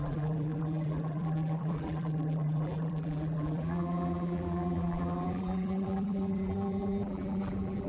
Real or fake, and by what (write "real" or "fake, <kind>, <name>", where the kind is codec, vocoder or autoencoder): fake, vocoder, BigVGAN v2